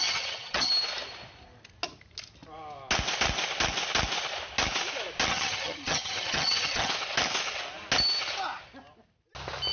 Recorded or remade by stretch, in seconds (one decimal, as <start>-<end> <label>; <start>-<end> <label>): 0.0-0.7 remade; 0.7-5.3 recorded; 5.3-6.9 remade; 6.9-9.7 recorded

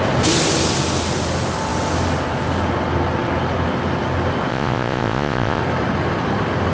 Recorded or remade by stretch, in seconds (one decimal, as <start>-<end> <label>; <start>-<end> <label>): 0.0-4.5 recorded; 4.5-5.6 remade; 5.6-6.7 recorded